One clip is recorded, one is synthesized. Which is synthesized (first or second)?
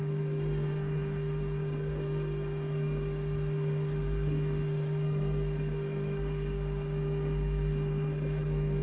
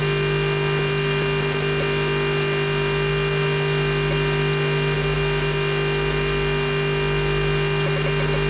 first